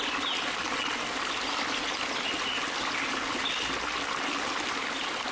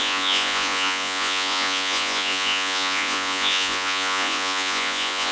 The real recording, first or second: first